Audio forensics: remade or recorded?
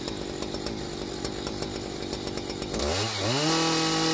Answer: recorded